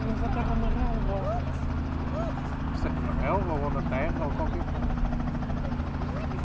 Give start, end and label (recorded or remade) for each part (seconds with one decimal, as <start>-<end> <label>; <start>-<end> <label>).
0.0-6.4 recorded